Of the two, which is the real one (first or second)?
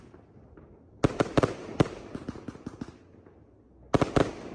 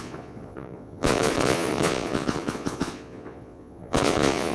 first